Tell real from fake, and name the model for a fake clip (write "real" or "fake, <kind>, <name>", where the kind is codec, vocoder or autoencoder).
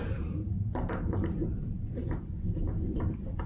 fake, vocoder, BigVGAN v2